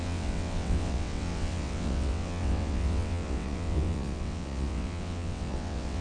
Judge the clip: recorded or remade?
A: remade